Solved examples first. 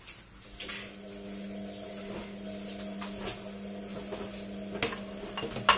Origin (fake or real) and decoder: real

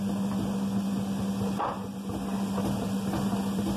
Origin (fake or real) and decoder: real